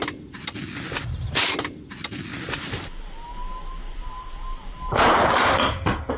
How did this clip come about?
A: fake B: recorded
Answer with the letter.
B